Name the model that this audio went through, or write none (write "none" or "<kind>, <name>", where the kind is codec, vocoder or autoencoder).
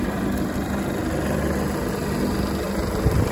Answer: none